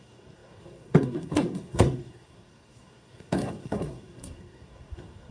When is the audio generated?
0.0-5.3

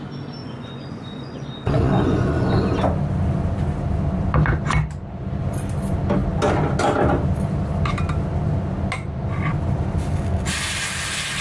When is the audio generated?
0.4-2.7

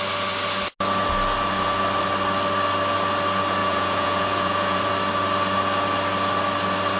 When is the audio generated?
3.6-4.9

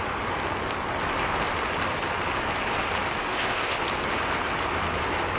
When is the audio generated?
3.3-3.8

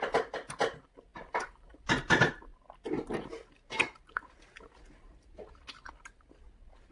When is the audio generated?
none

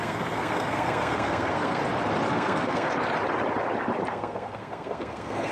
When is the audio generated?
0.0-1.8; 2.3-2.9; 4.1-5.5

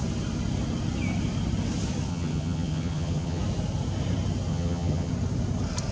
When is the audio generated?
2.1-3.4; 4.5-5.1